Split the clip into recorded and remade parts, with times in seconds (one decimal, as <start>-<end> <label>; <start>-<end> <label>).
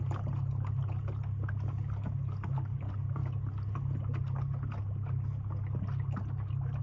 0.0-6.8 recorded